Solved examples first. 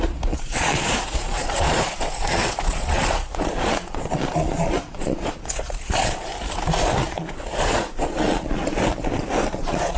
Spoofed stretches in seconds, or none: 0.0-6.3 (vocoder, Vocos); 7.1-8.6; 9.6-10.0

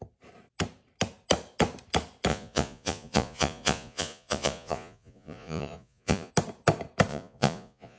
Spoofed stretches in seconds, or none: 2.3-6.3 (vocoder, Vocos); 7.1-8.0

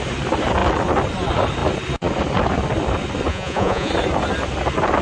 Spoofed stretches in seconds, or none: 3.3-3.9 (vocoder, Vocos)